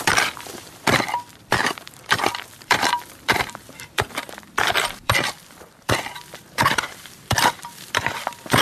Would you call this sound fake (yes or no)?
yes